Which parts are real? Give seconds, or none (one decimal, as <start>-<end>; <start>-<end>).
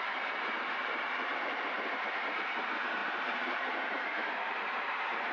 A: none